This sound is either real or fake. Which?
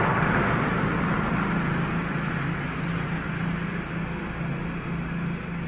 real